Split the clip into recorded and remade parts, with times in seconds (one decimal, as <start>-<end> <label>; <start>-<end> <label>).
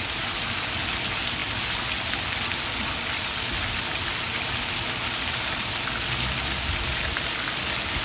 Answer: 0.0-8.0 recorded